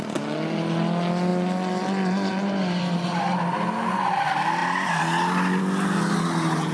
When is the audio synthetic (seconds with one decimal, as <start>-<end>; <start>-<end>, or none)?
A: none